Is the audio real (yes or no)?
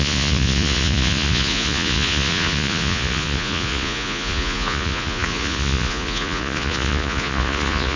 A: no